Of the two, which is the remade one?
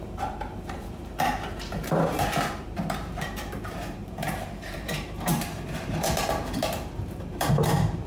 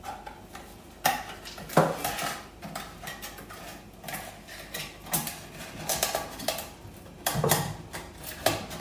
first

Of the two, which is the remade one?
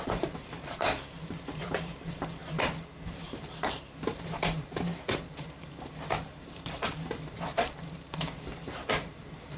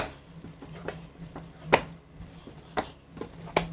first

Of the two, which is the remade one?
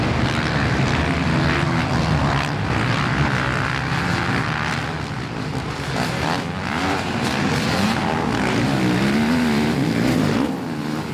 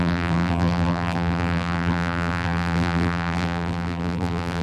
second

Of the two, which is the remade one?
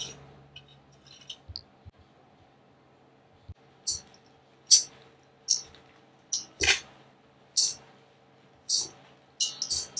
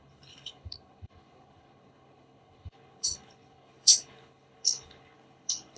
second